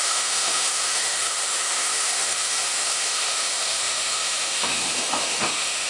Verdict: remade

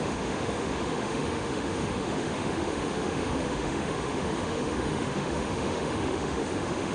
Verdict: remade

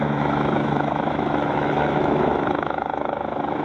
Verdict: remade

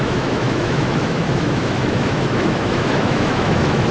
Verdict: remade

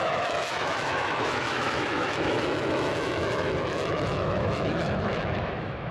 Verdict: remade